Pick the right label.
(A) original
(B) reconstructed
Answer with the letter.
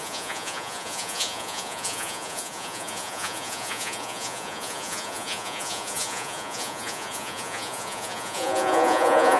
B